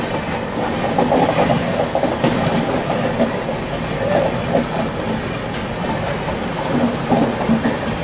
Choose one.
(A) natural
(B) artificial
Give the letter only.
A